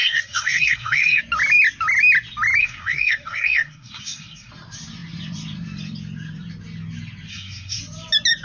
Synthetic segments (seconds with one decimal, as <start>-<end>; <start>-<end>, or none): 0.0-1.2; 2.6-4.5; 7.3-7.8